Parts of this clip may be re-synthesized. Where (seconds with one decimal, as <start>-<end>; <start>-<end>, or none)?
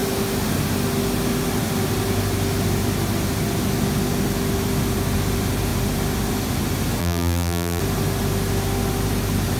7.0-7.8